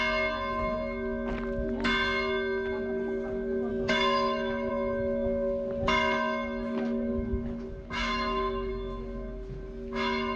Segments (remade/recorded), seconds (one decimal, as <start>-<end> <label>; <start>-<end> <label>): 0.0-3.7 recorded; 3.7-4.7 remade; 4.7-8.1 recorded; 8.1-8.7 remade; 8.7-10.4 recorded